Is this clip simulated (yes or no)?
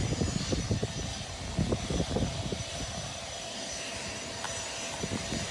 no